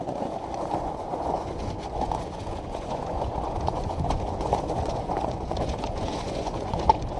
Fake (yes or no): yes